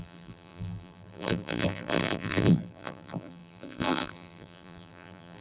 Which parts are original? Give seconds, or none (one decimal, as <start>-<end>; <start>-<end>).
none